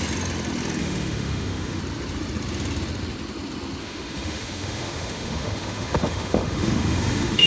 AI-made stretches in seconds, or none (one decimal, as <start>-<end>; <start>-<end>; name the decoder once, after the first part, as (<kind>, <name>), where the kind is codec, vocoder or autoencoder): 0.8-1.8 (autoencoder, DAC-VAE); 3.8-7.5